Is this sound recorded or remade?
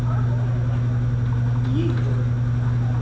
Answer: recorded